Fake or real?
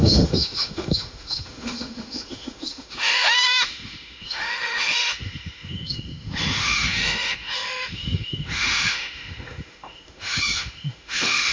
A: fake